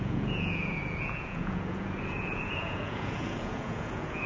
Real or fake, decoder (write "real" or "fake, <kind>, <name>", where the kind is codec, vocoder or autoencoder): fake, vocoder, Vocos